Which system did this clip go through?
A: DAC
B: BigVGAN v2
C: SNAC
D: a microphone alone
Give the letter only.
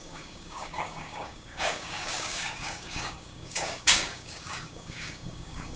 A